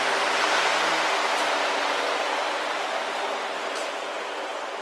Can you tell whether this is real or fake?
real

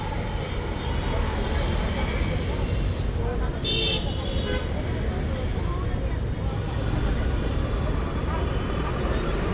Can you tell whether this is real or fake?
real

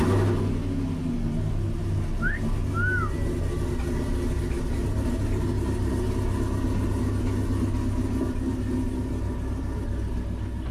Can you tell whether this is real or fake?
real